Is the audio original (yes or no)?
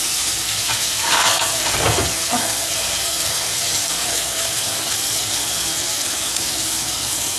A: no